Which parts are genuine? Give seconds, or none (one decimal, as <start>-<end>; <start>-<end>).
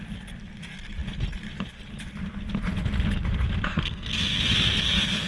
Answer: 0.0-3.7